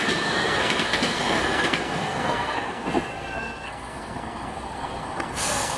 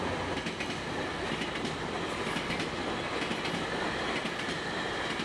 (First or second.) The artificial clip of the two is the first